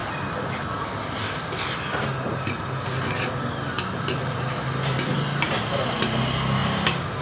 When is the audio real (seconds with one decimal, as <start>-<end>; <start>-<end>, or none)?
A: 0.0-7.2